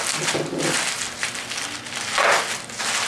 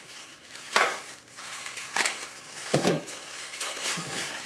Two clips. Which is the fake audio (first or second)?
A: second